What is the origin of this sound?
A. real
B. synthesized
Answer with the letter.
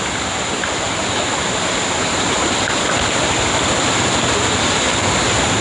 A